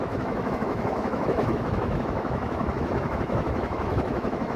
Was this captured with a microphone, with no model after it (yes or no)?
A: no